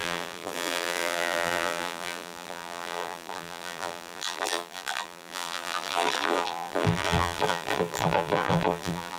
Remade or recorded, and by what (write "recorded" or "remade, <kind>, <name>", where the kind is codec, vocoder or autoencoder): remade, vocoder, BigVGAN v2